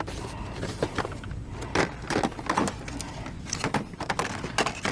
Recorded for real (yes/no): yes